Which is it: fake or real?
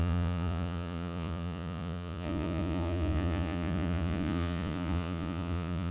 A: fake